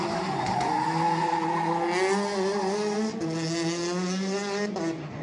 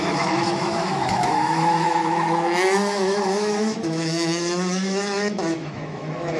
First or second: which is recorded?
first